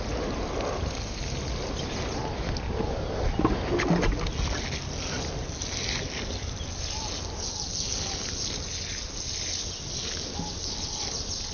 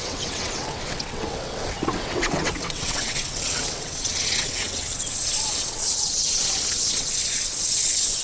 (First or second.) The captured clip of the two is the first